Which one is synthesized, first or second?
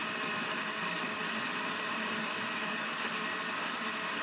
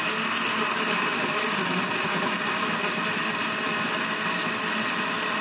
first